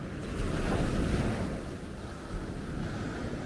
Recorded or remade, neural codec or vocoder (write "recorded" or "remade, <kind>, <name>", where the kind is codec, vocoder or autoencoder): recorded